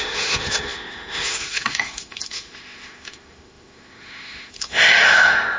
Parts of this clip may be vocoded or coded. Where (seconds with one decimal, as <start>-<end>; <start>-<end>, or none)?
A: 0.0-5.6